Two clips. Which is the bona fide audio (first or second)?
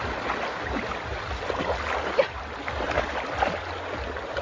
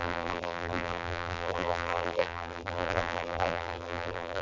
first